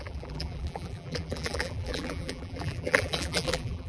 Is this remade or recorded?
remade